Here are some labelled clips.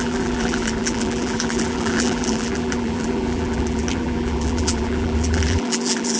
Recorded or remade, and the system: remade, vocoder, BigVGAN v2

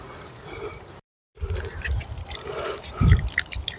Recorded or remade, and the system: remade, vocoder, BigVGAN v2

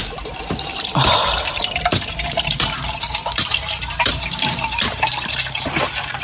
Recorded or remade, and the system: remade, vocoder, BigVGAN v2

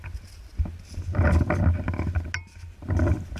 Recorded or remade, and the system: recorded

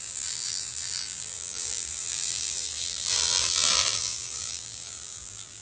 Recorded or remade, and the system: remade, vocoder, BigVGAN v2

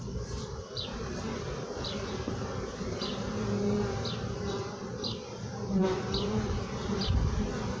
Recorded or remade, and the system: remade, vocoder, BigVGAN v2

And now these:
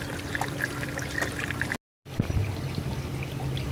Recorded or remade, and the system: recorded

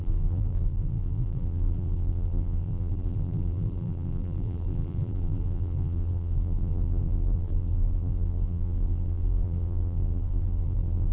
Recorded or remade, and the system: remade, vocoder, BigVGAN v2